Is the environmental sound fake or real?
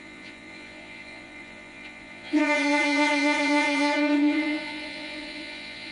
fake